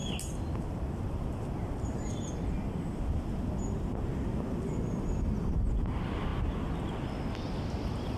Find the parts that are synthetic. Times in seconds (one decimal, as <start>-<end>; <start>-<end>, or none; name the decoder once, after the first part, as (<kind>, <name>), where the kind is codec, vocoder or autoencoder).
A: none